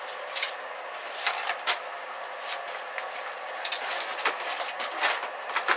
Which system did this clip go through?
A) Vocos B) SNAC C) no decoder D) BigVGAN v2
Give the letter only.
C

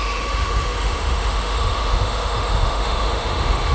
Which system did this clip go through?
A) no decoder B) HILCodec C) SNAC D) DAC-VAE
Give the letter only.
D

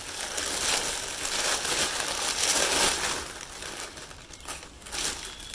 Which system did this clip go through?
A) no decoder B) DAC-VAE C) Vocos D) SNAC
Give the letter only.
A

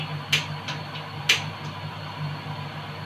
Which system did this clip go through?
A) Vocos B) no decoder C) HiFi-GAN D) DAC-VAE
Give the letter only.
B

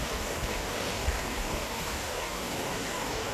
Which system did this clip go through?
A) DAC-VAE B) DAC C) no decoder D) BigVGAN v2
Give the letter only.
B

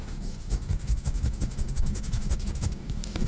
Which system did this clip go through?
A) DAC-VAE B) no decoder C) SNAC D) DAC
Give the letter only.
D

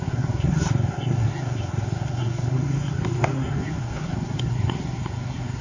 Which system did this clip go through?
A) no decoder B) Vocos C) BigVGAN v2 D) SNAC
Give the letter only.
D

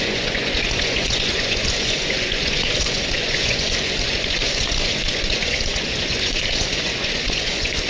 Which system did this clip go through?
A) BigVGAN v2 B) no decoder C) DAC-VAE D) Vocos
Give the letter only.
D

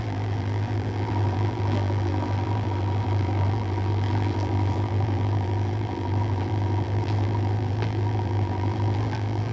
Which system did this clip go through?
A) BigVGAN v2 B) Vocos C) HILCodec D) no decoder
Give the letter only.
A